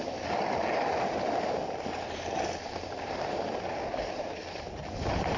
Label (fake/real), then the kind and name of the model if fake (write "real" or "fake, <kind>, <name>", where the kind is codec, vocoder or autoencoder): real